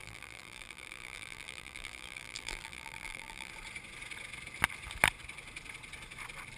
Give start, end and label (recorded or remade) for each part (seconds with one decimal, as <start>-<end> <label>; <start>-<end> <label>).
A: 0.0-3.5 remade; 3.5-6.6 recorded